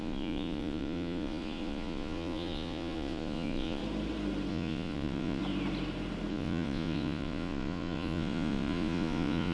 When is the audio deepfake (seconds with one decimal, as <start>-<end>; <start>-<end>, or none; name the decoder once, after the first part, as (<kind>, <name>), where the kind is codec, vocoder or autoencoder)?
0.0-3.8 (vocoder, Vocos); 4.5-5.4; 6.3-9.5